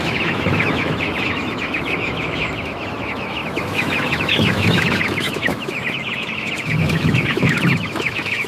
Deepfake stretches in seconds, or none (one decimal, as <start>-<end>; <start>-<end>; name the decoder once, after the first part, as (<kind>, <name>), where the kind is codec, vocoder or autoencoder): 0.0-8.5 (autoencoder, DAC-VAE)

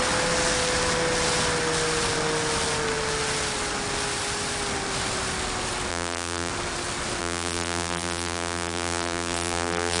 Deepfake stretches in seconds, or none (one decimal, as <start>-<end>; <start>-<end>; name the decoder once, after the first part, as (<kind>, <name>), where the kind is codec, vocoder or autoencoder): 5.9-6.5 (vocoder, BigVGAN v2); 7.2-10.0